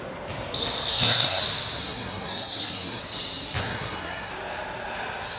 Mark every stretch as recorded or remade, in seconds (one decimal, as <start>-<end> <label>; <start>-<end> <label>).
0.0-0.9 recorded; 0.9-1.4 remade; 1.4-1.8 recorded; 1.8-3.0 remade; 3.0-3.6 recorded; 3.6-4.3 remade; 4.3-5.4 recorded